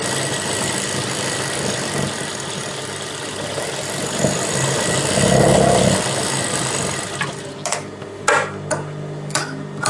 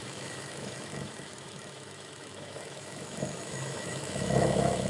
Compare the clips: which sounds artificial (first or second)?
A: second